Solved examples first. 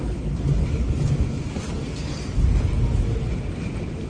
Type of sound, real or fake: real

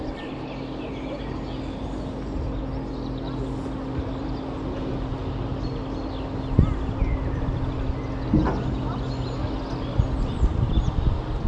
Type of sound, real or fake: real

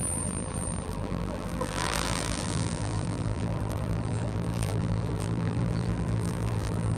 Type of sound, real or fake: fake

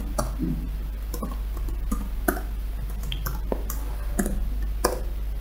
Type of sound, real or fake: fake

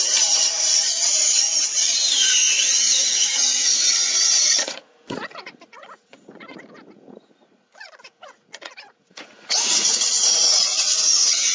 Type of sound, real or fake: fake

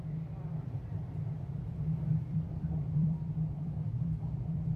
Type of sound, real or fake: fake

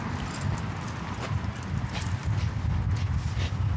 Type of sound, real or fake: real